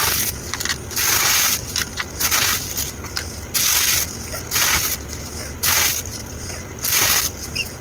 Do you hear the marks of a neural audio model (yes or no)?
no